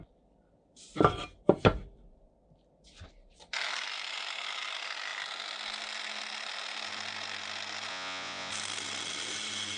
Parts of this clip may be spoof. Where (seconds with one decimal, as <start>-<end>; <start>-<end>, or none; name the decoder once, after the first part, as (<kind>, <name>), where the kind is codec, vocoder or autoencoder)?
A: 7.9-8.5 (vocoder, Vocos)